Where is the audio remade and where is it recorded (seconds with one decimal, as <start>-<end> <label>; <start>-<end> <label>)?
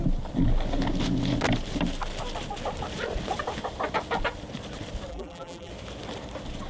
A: 0.0-5.1 recorded; 5.1-5.7 remade; 5.7-6.7 recorded